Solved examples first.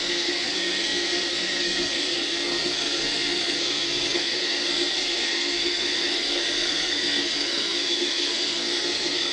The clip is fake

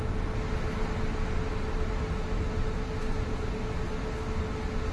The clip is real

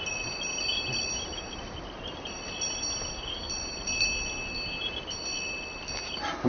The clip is real